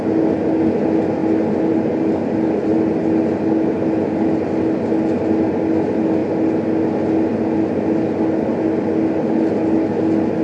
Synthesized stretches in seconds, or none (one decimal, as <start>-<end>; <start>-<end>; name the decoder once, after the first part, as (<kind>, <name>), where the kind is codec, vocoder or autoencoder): none